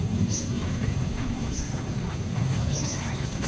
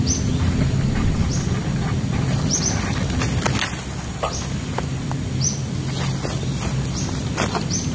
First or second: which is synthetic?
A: first